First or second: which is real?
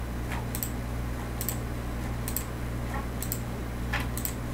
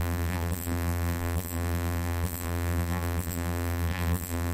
first